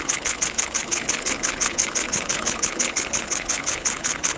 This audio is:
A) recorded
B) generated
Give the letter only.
B